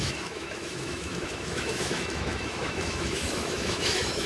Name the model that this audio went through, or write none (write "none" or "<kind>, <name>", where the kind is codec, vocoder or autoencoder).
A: autoencoder, DAC-VAE